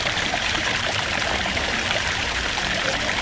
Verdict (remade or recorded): remade